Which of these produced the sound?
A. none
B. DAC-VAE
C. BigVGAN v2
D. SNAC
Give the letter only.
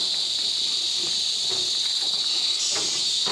A